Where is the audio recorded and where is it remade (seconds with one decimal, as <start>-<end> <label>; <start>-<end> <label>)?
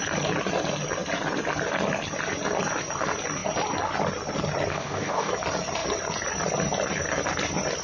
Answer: 0.0-4.7 recorded; 4.7-5.3 remade; 5.3-7.8 recorded